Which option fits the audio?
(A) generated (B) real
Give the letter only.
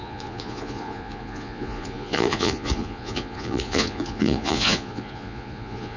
A